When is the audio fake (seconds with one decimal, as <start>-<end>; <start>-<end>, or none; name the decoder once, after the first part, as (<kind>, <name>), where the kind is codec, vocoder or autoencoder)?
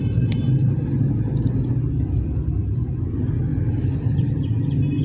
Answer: 0.6-1.7 (vocoder, BigVGAN v2); 3.5-4.4